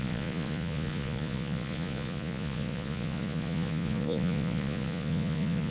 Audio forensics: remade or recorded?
remade